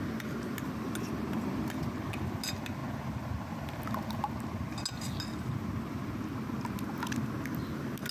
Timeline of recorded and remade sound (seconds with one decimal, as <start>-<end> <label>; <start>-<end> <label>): 0.0-8.1 recorded